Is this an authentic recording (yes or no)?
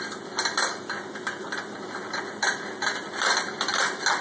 yes